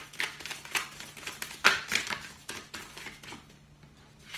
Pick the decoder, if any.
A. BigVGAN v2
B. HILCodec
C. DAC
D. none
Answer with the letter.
D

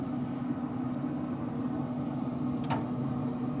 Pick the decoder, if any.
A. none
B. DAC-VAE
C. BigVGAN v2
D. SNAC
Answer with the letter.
A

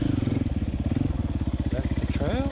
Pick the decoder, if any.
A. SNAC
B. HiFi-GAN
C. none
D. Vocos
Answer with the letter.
C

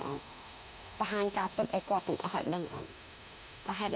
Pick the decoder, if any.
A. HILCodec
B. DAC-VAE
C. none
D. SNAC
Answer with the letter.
B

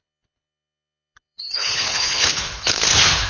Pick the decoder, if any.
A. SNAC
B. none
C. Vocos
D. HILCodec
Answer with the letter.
D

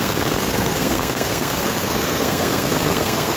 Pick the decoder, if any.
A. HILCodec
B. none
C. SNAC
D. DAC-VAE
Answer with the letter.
C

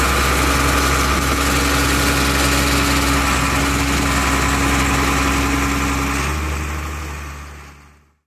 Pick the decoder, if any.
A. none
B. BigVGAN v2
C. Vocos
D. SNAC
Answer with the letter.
A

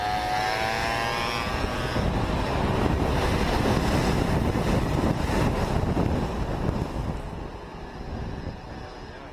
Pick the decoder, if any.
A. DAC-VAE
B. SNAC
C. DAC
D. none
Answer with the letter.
D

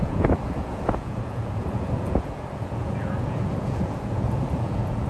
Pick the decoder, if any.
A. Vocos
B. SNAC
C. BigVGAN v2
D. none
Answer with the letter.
A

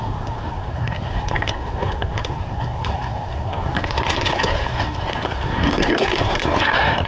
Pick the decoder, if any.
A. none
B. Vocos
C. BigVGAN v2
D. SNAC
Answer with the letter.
D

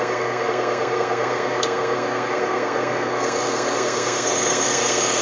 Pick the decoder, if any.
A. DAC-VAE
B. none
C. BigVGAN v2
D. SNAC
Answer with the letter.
D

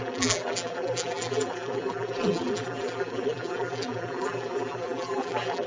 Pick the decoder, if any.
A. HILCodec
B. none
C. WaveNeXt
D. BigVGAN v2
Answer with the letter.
D